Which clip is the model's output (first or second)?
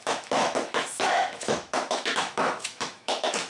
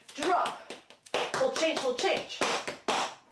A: first